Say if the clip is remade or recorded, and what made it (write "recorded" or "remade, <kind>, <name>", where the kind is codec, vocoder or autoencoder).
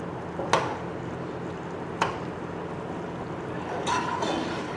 recorded